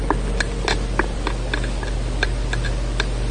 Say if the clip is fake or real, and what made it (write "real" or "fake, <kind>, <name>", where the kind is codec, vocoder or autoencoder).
real